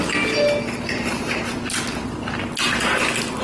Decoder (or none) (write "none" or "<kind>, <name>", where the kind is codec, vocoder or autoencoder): none